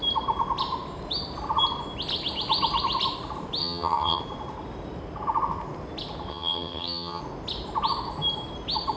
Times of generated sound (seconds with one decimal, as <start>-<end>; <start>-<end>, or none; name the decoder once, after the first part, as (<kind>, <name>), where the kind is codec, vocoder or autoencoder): 3.6-4.2 (vocoder, HiFi-GAN); 6.3-7.2